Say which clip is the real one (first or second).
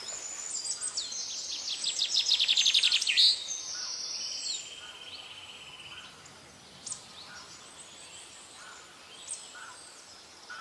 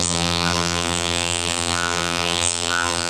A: first